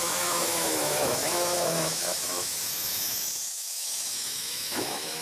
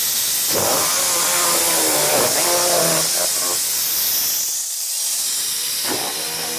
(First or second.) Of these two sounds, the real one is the second